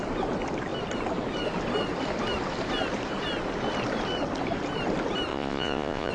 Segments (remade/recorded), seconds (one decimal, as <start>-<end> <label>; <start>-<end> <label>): 0.0-5.3 recorded; 5.3-6.1 remade